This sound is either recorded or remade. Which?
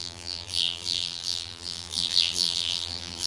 remade